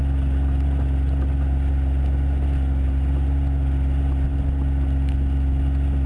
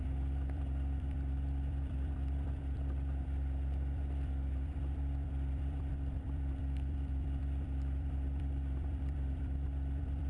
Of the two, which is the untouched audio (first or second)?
first